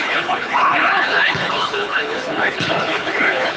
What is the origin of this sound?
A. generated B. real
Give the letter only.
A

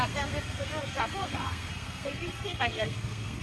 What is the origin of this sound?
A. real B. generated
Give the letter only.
B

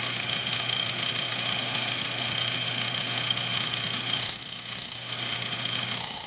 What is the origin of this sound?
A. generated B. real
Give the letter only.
A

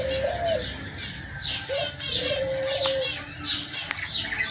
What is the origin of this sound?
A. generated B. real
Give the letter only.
B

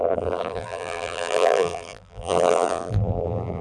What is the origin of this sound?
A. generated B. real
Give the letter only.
A